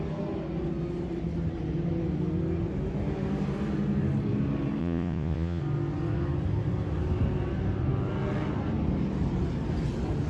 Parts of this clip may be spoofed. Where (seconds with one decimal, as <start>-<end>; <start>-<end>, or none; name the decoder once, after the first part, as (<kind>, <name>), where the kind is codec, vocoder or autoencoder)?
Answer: 4.8-5.6 (vocoder, Vocos)